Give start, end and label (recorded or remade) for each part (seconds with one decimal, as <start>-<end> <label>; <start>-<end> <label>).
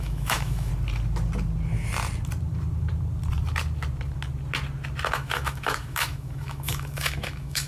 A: 0.0-0.7 remade; 0.7-5.1 recorded; 5.1-7.7 remade